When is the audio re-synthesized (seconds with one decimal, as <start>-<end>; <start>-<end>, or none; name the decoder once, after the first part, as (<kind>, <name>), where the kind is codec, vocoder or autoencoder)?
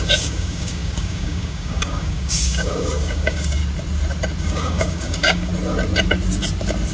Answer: 0.0-3.6 (codec, DAC); 4.4-5.5